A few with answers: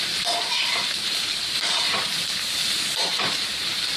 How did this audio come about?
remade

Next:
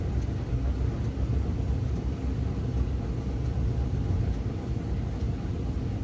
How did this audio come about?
recorded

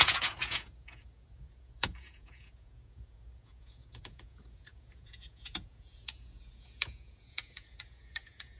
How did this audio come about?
remade